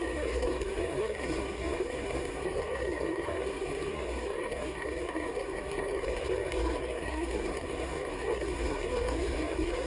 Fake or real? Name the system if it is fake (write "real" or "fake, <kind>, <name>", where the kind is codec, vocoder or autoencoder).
fake, codec, SNAC